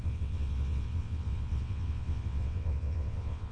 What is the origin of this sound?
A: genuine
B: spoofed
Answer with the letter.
B